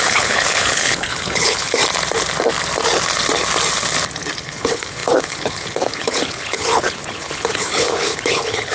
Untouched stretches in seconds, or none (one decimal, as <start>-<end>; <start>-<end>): 1.8-4.4